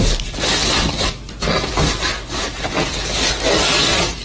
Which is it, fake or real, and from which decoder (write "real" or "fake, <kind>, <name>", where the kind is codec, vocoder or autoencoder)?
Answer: real